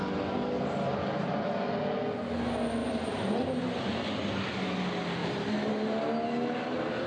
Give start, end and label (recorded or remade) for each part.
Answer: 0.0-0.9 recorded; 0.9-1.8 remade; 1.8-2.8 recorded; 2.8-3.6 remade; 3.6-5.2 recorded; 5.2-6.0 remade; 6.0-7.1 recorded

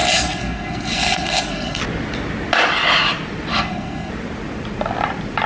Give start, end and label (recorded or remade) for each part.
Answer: 0.0-1.8 remade; 1.8-3.5 recorded; 3.5-4.1 remade; 4.1-5.5 recorded

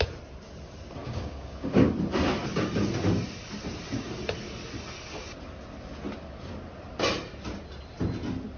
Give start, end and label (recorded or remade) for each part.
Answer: 0.0-1.0 recorded; 1.0-1.9 remade; 1.9-8.6 recorded